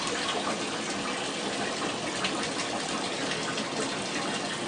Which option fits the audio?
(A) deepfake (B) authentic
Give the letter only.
B